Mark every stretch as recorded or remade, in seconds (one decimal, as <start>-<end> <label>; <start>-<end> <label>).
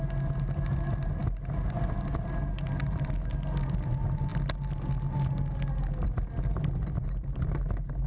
0.0-8.1 recorded